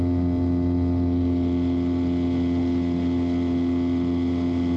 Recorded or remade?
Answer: recorded